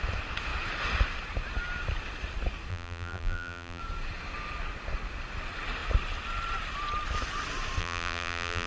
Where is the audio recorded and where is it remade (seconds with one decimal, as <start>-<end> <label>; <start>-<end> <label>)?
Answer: 0.0-2.7 recorded; 2.7-3.8 remade; 3.8-7.8 recorded; 7.8-8.7 remade